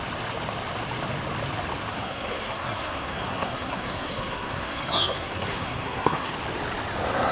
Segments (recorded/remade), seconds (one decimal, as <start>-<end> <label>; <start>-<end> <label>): 0.0-1.9 recorded; 1.9-6.3 remade; 6.3-7.3 recorded